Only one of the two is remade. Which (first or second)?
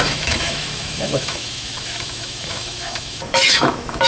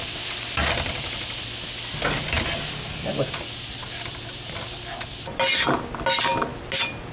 first